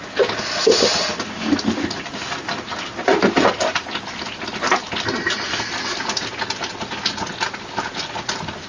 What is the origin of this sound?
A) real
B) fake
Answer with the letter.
A